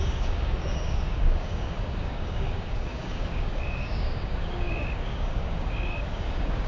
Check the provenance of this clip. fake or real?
fake